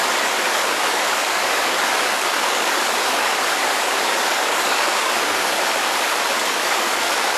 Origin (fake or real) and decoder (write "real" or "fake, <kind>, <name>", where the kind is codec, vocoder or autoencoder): fake, codec, DAC